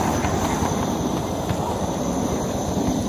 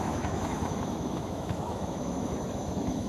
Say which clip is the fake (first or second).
second